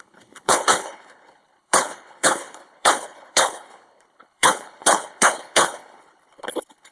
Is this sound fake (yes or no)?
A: yes